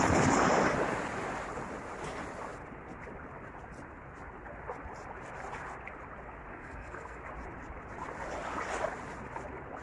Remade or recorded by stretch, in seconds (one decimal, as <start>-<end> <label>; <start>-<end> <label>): 0.0-6.5 recorded; 6.5-7.2 remade; 7.2-9.8 recorded